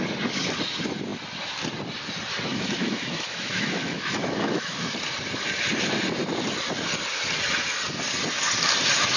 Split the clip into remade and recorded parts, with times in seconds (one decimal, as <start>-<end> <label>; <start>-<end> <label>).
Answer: 0.0-2.5 recorded; 2.5-4.9 remade; 4.9-9.2 recorded